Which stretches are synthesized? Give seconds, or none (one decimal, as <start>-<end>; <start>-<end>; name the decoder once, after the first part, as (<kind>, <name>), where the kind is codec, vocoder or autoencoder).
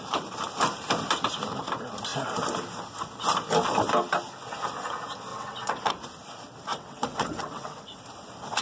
5.3-5.9 (vocoder, WaveNeXt); 6.7-8.0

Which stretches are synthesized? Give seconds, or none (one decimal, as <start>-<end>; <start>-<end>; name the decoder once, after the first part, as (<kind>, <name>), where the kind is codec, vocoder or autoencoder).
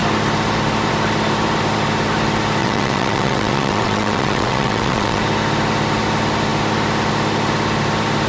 2.6-5.2 (vocoder, WaveNeXt)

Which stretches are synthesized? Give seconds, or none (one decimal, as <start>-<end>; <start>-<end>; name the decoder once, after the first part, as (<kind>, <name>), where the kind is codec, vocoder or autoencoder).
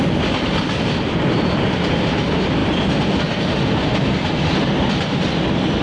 none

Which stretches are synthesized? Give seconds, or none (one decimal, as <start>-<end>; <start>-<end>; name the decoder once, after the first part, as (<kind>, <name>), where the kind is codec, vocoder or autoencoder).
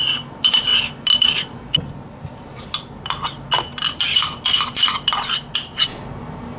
none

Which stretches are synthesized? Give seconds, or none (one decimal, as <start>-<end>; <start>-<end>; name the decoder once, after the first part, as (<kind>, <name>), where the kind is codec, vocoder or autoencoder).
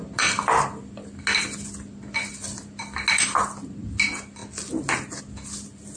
none